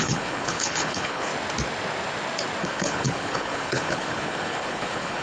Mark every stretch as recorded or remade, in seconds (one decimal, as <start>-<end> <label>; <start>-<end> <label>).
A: 0.0-1.3 remade; 1.3-2.6 recorded; 2.6-5.2 remade